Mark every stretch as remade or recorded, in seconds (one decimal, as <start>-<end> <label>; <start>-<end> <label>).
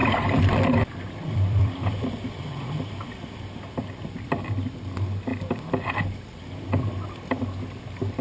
0.0-4.5 remade; 4.5-5.3 recorded; 5.3-6.4 remade; 6.4-8.2 recorded